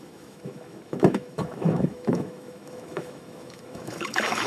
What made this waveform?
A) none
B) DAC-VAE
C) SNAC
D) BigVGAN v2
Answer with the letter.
B